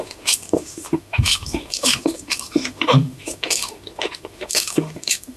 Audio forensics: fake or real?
fake